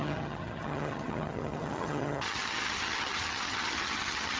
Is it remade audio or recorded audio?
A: remade